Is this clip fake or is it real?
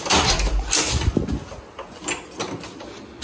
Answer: real